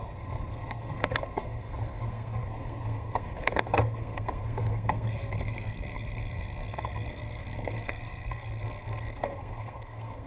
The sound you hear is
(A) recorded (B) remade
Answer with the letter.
B